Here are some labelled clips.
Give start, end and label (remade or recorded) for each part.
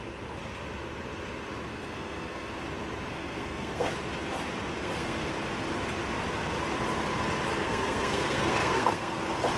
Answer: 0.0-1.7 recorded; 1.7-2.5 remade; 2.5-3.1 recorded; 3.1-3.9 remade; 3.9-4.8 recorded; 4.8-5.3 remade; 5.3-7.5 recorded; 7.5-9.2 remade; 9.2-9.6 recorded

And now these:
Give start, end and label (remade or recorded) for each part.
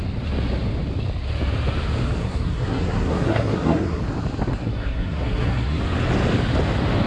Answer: 0.0-2.2 recorded; 2.2-4.0 remade; 4.0-4.6 recorded; 4.6-5.8 remade; 5.8-7.1 recorded